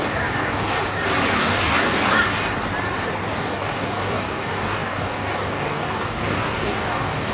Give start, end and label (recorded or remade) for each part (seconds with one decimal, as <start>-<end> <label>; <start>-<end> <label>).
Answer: 0.0-0.8 remade; 0.8-1.4 recorded; 1.4-2.1 remade; 2.1-3.3 recorded; 3.3-7.3 remade